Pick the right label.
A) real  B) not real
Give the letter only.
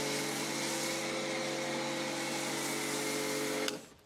A